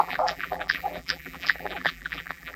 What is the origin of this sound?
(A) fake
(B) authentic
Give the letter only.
A